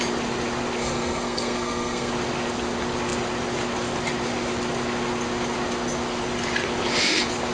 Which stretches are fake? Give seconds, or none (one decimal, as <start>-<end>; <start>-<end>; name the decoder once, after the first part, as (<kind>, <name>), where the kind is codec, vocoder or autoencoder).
0.8-2.1 (codec, SNAC)